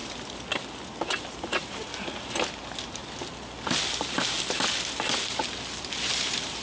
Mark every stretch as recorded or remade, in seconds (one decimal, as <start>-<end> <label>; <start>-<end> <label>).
0.0-1.2 recorded; 1.2-3.0 remade; 3.0-6.1 recorded; 6.1-6.6 remade

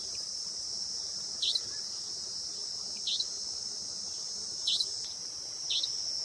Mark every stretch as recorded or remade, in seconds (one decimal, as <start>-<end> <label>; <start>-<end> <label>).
0.0-2.8 remade; 2.8-4.4 recorded; 4.4-6.2 remade